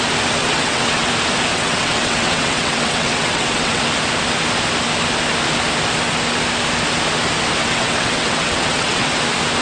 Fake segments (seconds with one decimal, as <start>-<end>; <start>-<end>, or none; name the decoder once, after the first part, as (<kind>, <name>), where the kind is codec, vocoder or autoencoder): 0.4-1.1 (vocoder, WaveNeXt); 1.5-3.8; 7.6-9.1